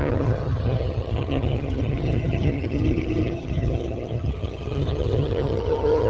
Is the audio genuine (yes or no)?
no